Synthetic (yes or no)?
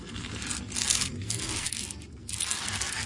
yes